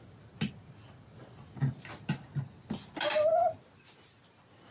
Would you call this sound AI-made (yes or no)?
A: no